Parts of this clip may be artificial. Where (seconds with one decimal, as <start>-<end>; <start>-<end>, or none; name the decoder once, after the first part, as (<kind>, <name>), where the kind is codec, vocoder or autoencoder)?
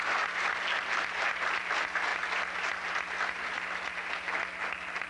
none